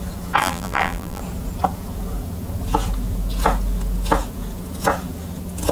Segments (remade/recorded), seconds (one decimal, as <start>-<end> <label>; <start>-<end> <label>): 0.0-0.4 recorded; 0.4-1.2 remade; 1.2-5.7 recorded

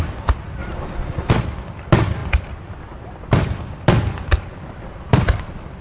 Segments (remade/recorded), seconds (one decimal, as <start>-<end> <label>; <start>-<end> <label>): 0.0-0.6 recorded; 0.6-1.3 remade; 1.3-2.2 recorded; 2.2-4.6 remade; 4.6-5.8 recorded